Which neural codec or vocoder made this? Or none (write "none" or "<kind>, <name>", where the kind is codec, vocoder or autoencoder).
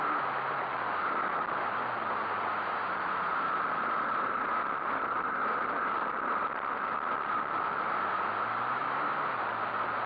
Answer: none